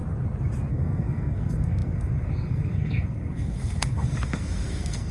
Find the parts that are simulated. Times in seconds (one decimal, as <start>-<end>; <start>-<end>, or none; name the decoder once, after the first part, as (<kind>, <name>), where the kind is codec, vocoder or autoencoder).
0.7-5.1 (codec, SNAC)